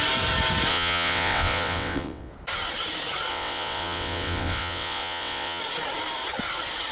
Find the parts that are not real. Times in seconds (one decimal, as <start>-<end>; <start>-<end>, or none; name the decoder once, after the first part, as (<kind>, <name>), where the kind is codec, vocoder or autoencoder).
0.7-2.3 (vocoder, WaveNeXt); 3.3-5.6